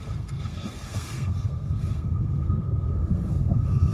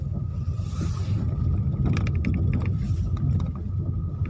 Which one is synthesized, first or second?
first